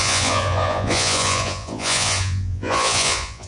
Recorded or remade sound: remade